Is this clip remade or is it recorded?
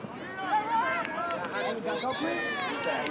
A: recorded